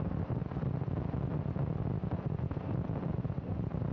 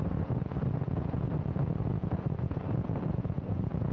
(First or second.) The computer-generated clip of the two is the second